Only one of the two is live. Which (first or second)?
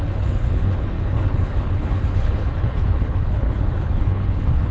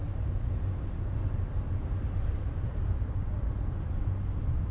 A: second